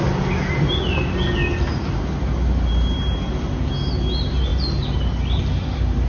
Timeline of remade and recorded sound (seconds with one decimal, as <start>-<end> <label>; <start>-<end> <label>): 0.0-6.1 recorded